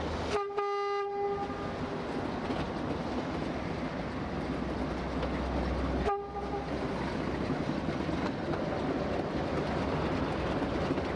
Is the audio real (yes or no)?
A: yes